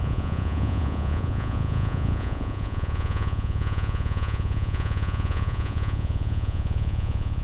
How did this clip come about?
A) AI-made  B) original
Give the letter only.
A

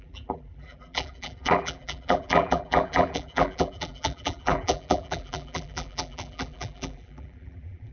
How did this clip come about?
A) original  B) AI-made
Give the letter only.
B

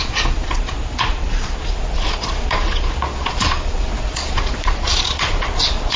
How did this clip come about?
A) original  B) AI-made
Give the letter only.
B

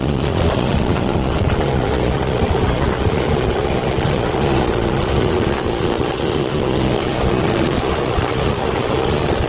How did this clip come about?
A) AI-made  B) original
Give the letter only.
A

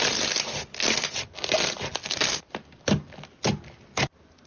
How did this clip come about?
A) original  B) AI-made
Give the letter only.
A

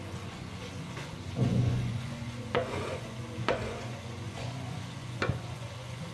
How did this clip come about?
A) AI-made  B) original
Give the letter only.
A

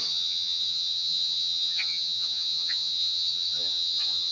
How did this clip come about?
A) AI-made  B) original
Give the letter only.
A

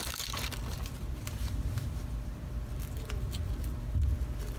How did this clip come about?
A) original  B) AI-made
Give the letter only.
B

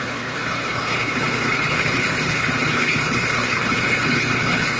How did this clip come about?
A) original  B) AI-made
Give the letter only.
B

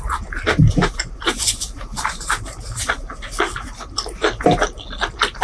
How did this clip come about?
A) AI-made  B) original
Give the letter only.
B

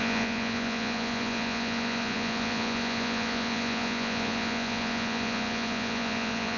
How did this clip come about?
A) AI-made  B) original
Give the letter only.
A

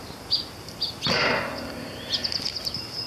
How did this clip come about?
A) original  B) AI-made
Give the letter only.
A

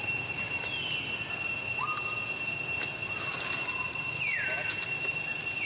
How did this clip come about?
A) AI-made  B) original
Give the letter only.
B